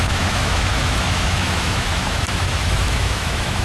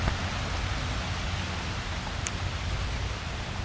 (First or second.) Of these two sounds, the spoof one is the first